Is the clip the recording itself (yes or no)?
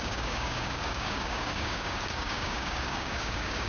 no